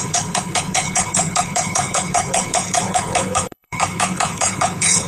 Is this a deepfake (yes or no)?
yes